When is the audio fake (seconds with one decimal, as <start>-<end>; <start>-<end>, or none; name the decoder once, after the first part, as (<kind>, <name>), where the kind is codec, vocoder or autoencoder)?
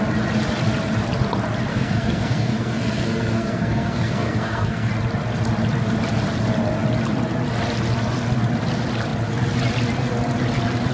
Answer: 1.7-4.9 (codec, SNAC)